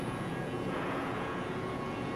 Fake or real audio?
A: fake